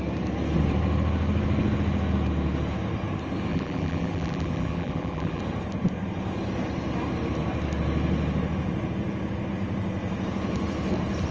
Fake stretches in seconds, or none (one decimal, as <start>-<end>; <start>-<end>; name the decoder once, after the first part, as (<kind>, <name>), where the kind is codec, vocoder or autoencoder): 3.5-5.4 (vocoder, BigVGAN v2)